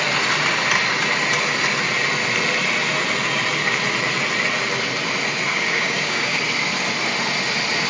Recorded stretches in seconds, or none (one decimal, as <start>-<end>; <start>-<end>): 0.0-5.5; 6.4-7.9